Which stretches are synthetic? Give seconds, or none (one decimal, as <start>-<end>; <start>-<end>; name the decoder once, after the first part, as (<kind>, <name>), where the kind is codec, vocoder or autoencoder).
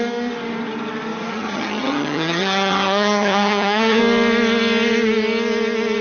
1.3-4.0 (vocoder, HiFi-GAN)